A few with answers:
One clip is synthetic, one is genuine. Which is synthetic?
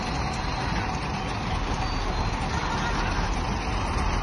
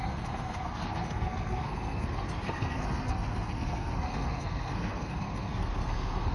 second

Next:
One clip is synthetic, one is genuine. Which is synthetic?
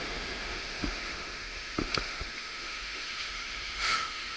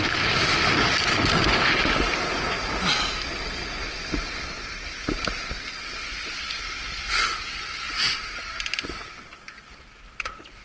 first